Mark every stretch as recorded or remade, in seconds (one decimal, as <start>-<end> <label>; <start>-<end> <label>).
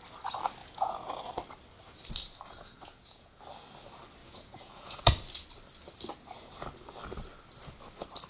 0.0-0.6 recorded; 0.6-1.2 remade; 1.2-2.2 recorded; 2.2-3.4 remade; 3.4-4.2 recorded; 4.2-5.0 remade; 5.0-8.3 recorded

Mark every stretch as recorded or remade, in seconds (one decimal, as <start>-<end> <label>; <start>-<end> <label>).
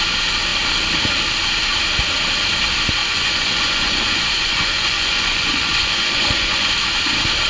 0.0-3.0 recorded; 3.0-6.7 remade; 6.7-7.5 recorded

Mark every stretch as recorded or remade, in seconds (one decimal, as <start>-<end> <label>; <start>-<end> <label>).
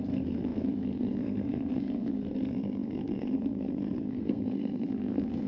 0.0-5.5 remade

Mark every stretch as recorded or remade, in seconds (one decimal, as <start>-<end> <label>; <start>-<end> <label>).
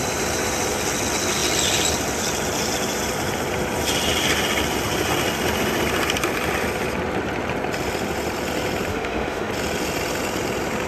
0.0-8.9 recorded; 8.9-9.5 remade; 9.5-10.9 recorded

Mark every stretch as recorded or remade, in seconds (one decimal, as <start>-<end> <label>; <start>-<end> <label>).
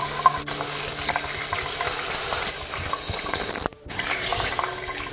0.0-3.1 recorded; 3.1-4.3 remade; 4.3-5.1 recorded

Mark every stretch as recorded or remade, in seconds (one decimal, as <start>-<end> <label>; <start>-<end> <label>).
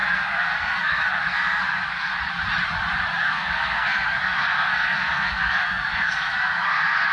0.0-2.1 remade; 2.1-3.2 recorded; 3.2-7.1 remade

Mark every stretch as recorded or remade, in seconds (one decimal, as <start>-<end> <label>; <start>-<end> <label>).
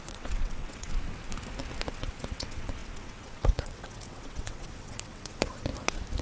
0.0-0.9 remade; 0.9-1.9 recorded; 1.9-5.7 remade; 5.7-6.2 recorded